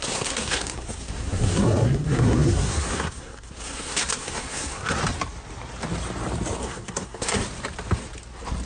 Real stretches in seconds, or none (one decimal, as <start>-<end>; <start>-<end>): 5.0-6.6; 7.4-8.7